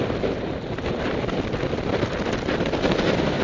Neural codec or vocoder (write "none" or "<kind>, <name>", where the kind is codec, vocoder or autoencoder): none